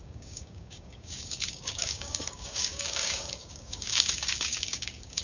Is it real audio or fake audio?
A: fake